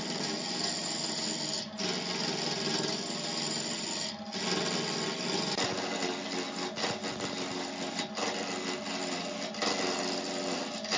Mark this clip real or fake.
real